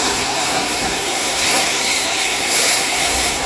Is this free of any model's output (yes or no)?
no